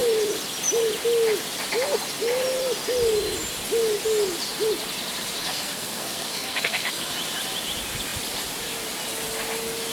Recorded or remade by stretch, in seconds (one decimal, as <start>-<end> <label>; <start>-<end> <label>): 0.0-5.4 recorded; 5.4-7.1 remade; 7.1-9.9 recorded